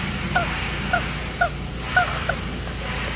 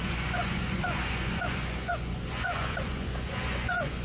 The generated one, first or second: second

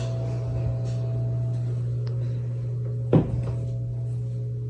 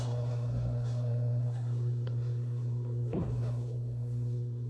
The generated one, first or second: second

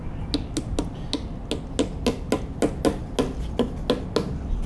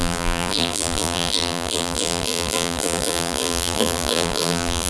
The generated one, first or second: second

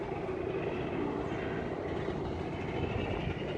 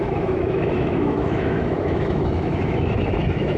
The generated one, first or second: second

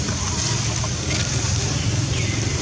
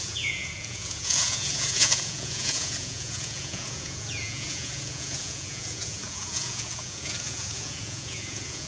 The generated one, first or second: second